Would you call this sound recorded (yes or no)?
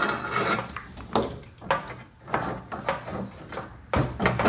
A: yes